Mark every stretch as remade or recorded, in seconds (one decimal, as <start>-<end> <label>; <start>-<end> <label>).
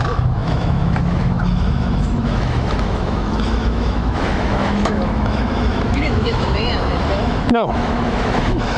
0.0-6.7 remade; 6.7-7.2 recorded; 7.2-8.8 remade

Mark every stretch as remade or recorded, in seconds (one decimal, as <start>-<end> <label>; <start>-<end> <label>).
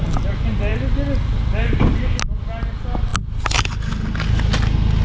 0.0-3.1 recorded; 3.1-3.9 remade; 3.9-5.0 recorded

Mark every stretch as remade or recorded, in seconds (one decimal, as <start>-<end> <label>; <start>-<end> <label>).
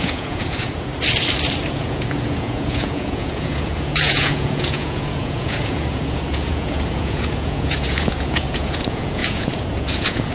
0.0-0.9 remade; 0.9-1.7 recorded; 1.7-10.3 remade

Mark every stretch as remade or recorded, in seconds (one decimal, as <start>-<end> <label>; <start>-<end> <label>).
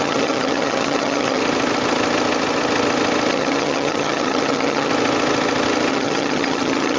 0.0-1.4 remade; 1.4-3.3 recorded; 3.3-4.9 remade; 4.9-5.9 recorded; 5.9-7.0 remade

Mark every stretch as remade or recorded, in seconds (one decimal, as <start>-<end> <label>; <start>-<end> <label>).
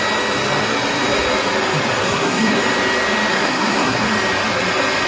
0.0-2.0 recorded; 2.0-2.6 remade; 2.6-3.3 recorded; 3.3-4.1 remade; 4.1-5.1 recorded